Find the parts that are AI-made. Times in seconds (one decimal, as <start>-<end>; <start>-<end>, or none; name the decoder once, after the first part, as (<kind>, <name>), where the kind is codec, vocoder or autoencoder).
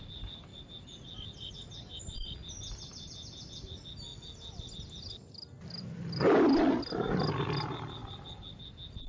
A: none